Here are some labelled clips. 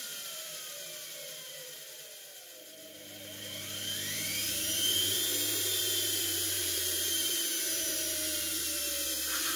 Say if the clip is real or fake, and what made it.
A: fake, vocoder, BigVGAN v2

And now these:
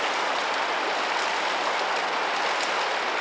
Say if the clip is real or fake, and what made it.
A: real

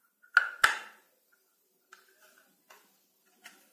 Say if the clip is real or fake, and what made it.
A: real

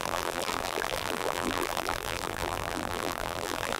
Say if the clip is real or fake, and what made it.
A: fake, vocoder, BigVGAN v2